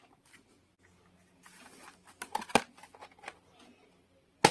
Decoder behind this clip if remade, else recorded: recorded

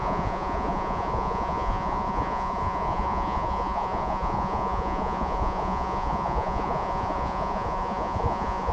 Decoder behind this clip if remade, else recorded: remade, vocoder, Vocos